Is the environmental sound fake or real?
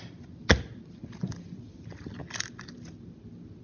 real